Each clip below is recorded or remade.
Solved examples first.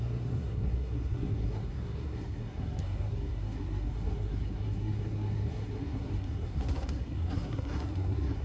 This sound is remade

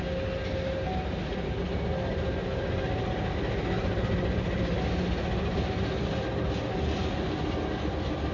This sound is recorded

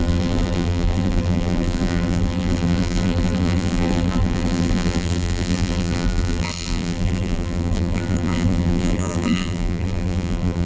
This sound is remade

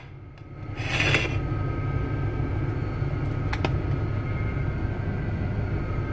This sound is recorded